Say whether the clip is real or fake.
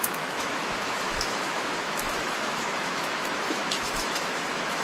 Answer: fake